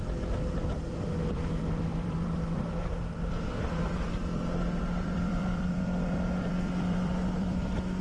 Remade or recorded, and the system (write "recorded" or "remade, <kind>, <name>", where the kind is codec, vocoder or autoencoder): remade, vocoder, BigVGAN v2